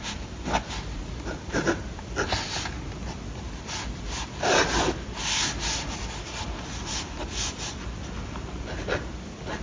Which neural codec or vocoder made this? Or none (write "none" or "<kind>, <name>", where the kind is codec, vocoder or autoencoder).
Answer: none